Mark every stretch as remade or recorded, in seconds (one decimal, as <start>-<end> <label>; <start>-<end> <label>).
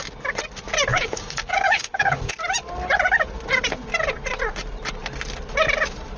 0.0-0.9 recorded; 0.9-2.3 remade; 2.3-6.2 recorded